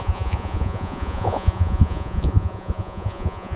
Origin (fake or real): fake